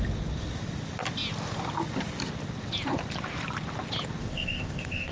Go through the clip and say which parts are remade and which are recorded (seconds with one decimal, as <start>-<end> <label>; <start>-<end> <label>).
0.0-4.2 recorded; 4.2-5.1 remade